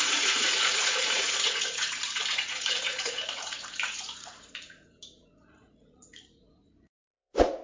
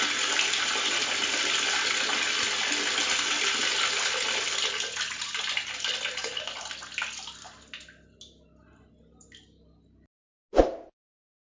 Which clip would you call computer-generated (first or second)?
first